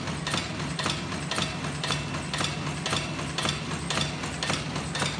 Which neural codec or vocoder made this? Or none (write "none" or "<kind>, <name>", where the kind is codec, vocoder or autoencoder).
none